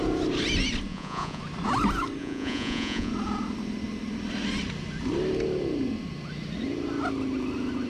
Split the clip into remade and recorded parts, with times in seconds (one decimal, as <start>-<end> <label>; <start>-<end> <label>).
0.0-0.9 recorded; 0.9-1.4 remade; 1.4-2.2 recorded; 2.2-3.1 remade; 3.1-7.9 recorded